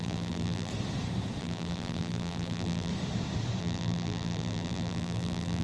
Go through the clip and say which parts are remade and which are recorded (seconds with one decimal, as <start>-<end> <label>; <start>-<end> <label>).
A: 0.0-0.7 remade; 0.7-1.4 recorded; 1.4-2.9 remade; 2.9-3.6 recorded; 3.6-5.6 remade